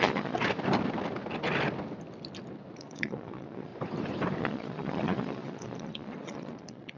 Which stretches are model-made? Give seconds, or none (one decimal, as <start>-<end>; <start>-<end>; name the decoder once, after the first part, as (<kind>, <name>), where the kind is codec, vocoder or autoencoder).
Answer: 0.0-0.4 (vocoder, Vocos); 2.8-3.7; 4.4-7.0